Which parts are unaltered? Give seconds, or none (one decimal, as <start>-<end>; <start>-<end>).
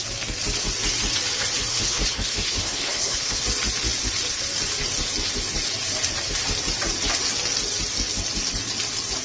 0.0-1.7; 3.4-9.2